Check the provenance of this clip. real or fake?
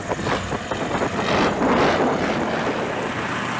real